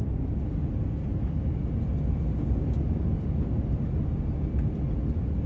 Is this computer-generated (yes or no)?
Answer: no